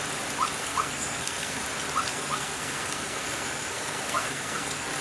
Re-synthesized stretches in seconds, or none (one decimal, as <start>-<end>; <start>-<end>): 0.6-1.6; 2.1-5.0